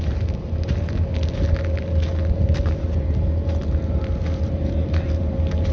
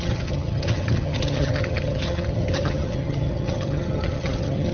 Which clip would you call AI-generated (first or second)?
second